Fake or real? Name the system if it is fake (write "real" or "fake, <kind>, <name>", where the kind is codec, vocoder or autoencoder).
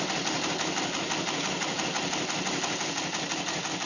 real